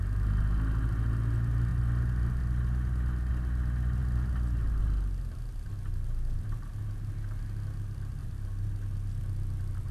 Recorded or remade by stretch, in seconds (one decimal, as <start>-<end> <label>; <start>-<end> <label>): 0.0-1.7 recorded; 1.7-3.3 remade; 3.3-8.2 recorded; 8.2-9.2 remade; 9.2-9.9 recorded